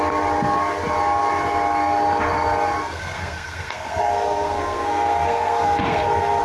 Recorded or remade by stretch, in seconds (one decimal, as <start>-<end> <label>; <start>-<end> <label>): 0.0-2.8 recorded; 2.8-6.4 remade